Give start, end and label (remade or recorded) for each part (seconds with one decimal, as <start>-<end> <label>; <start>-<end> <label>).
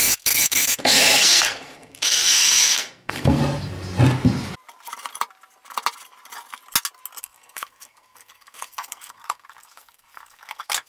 0.0-3.4 remade; 3.4-7.2 recorded; 7.2-10.9 remade